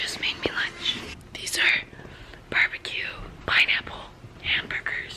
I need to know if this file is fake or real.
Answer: real